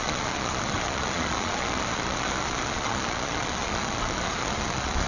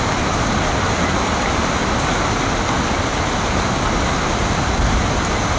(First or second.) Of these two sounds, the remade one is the first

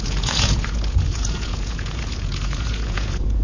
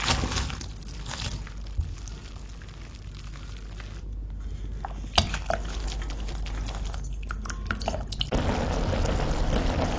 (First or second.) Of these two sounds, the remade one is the first